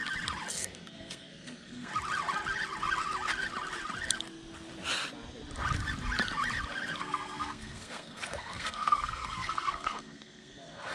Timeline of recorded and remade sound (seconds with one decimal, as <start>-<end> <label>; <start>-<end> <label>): 0.0-0.5 recorded; 0.5-1.9 remade; 1.9-7.0 recorded; 7.0-10.9 remade